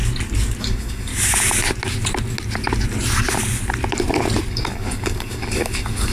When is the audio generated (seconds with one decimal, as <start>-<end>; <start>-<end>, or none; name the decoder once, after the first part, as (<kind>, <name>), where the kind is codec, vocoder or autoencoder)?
0.6-1.1 (codec, DAC); 4.5-6.1